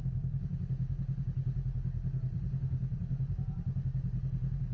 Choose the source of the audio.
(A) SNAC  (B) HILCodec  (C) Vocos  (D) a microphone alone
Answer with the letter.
D